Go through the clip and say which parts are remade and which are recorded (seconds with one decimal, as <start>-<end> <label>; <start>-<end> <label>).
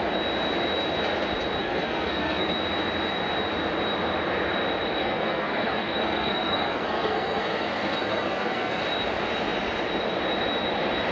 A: 0.0-1.6 recorded; 1.6-2.5 remade; 2.5-5.0 recorded; 5.0-8.8 remade; 8.8-11.1 recorded